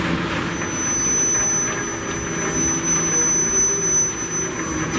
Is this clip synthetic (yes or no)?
no